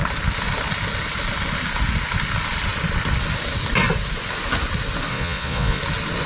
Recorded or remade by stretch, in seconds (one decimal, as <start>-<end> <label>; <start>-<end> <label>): 0.0-5.1 recorded; 5.1-5.8 remade; 5.8-6.3 recorded